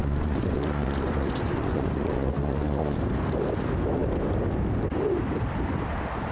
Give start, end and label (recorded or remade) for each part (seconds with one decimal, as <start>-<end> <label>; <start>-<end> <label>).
0.0-3.0 remade; 3.0-6.3 recorded

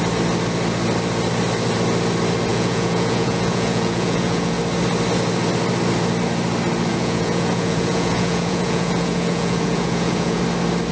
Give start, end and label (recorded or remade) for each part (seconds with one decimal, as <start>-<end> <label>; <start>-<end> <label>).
0.0-2.5 recorded; 2.5-4.6 remade; 4.6-6.9 recorded; 6.9-10.4 remade; 10.4-10.9 recorded

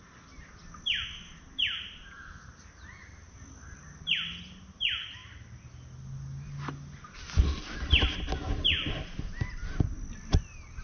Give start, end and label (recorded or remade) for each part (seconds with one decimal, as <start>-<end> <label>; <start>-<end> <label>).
0.0-10.8 recorded

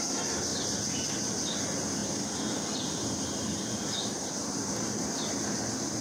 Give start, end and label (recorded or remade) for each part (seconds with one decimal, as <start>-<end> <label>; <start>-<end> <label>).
0.0-0.5 recorded; 0.5-1.1 remade; 1.1-4.0 recorded; 4.0-5.3 remade; 5.3-6.0 recorded

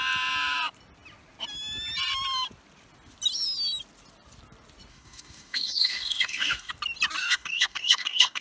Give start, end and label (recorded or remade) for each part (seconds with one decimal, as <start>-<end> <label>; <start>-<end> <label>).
0.0-4.9 recorded; 4.9-6.7 remade; 6.7-7.2 recorded; 7.2-8.4 remade

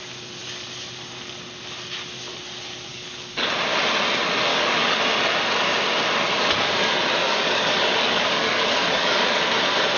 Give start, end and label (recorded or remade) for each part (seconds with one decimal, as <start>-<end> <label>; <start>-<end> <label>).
0.0-2.9 recorded; 2.9-3.5 remade; 3.5-4.5 recorded; 4.5-5.0 remade; 5.0-7.2 recorded; 7.2-9.4 remade; 9.4-10.0 recorded

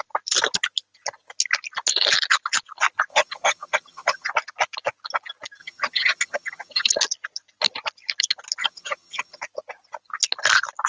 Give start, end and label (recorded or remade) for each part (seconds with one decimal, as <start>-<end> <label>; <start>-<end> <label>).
0.0-3.1 recorded; 3.1-4.3 remade; 4.3-5.6 recorded; 5.6-6.9 remade; 6.9-8.6 recorded; 8.6-9.4 remade; 9.4-10.9 recorded